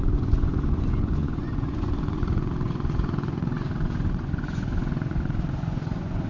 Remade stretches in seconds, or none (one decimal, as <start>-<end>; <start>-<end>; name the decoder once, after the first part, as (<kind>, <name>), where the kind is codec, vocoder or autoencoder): 0.0-6.3 (vocoder, Vocos)